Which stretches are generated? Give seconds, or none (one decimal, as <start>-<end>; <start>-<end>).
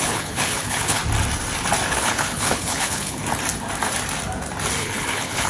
0.0-1.0; 1.9-3.2; 4.8-5.5